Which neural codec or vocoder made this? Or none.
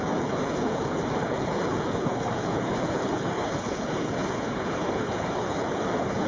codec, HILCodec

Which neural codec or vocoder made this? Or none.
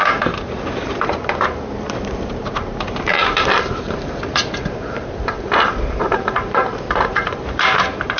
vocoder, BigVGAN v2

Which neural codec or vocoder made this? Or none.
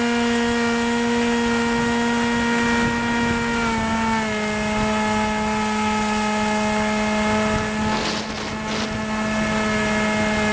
none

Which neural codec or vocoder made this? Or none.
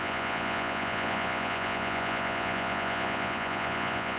vocoder, Vocos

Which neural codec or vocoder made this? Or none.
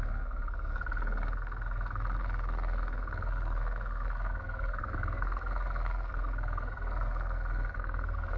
codec, SNAC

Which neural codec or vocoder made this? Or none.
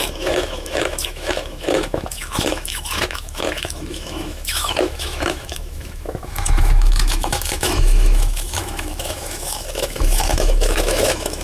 autoencoder, DAC-VAE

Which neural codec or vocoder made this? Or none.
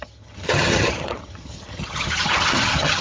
vocoder, HiFi-GAN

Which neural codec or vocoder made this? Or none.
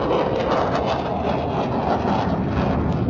none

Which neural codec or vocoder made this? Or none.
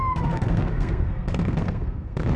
codec, SNAC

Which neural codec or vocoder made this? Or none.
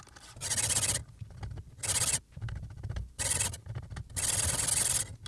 none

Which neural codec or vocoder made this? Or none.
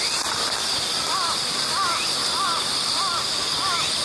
vocoder, BigVGAN v2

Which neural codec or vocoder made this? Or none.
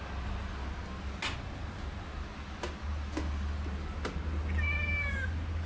none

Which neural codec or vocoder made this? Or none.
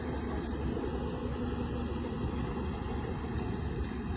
none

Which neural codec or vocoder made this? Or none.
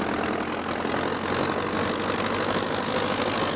none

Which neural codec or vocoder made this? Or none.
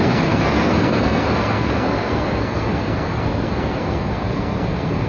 codec, SNAC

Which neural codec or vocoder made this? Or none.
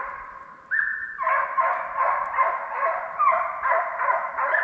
none